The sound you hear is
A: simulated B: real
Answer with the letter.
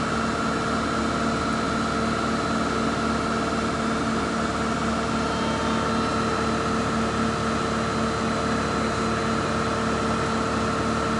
B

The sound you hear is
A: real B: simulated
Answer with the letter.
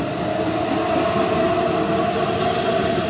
A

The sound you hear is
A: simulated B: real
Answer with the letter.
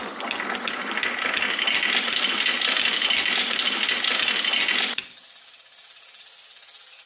B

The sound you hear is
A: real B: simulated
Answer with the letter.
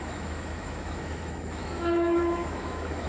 B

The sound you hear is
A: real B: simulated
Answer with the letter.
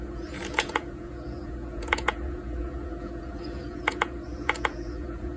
B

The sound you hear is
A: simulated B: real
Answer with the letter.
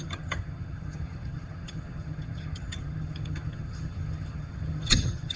A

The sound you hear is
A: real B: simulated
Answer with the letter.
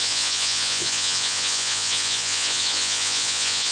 B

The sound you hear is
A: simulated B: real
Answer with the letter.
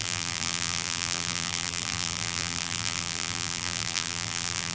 A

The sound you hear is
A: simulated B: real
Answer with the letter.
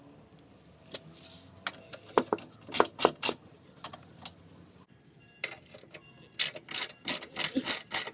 B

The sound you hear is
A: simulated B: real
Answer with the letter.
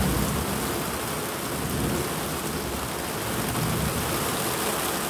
B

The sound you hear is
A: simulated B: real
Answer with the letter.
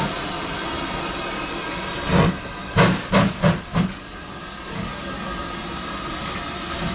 B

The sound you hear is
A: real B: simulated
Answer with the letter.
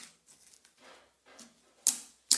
A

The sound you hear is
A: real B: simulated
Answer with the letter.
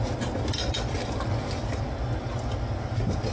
A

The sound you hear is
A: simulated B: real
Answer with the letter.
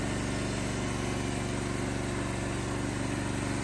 B